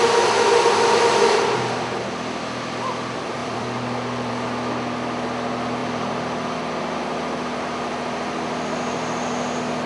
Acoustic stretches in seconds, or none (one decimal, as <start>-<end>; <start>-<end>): 0.0-3.4; 4.3-5.8; 7.0-9.9